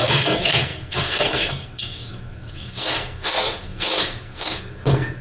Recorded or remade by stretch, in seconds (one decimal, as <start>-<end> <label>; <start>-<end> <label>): 0.0-5.2 remade